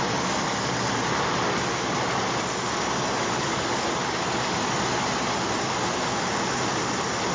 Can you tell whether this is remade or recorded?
recorded